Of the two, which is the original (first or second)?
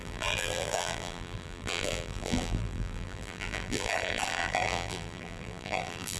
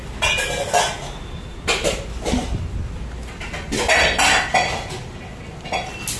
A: second